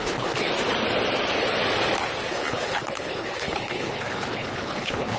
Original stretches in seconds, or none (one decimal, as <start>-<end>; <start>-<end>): 0.5-2.3